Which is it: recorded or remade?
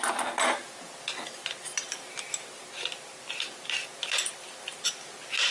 recorded